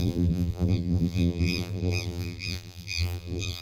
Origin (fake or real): fake